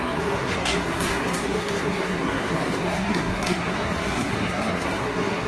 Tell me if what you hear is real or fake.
fake